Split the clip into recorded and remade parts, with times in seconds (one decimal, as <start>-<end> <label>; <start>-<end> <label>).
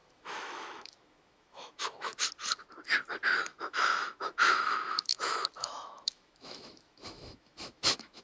0.0-2.1 remade; 2.1-3.4 recorded; 3.4-8.2 remade